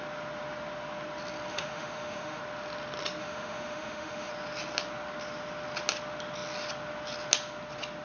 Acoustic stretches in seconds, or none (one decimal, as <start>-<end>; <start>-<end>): 0.0-1.5; 2.4-3.2; 4.3-8.0